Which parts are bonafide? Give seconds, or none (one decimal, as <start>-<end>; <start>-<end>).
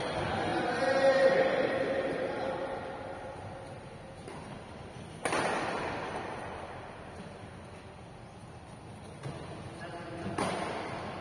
0.0-0.5; 2.3-11.2